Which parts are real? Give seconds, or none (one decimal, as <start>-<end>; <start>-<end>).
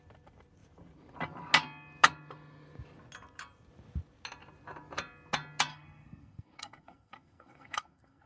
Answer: 0.0-5.7